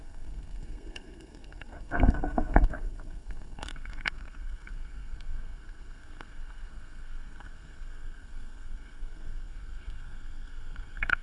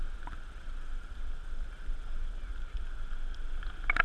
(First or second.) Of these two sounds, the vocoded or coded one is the first